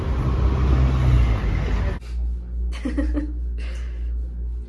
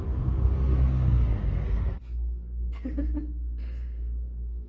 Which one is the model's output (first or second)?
second